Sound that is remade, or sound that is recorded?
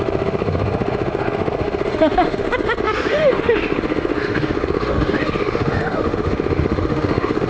remade